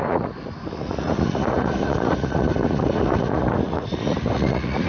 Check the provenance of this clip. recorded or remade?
remade